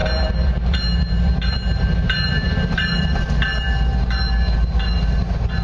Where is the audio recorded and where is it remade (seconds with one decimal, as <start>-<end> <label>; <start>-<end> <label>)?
0.0-5.6 recorded